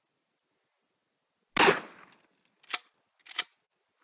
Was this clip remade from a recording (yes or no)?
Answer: no